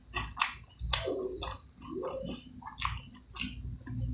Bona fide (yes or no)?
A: yes